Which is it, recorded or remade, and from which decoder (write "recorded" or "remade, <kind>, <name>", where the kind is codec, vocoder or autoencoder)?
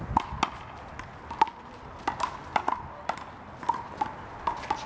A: recorded